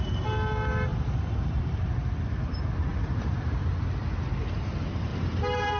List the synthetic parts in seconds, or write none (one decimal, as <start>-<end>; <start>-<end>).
0.9-1.8; 2.9-3.7; 5.1-5.8